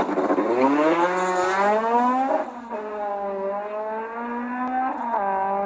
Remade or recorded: recorded